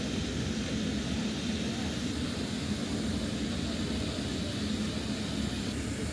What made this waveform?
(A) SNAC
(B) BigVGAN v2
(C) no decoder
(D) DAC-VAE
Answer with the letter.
C